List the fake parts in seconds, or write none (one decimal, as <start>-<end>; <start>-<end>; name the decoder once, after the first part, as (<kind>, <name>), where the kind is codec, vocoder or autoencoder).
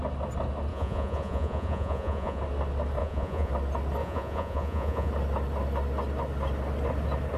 0.7-2.4 (vocoder, Vocos); 3.0-3.5; 4.0-5.1